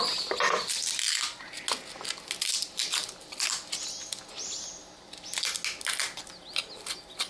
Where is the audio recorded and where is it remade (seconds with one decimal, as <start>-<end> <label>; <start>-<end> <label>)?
0.0-7.3 recorded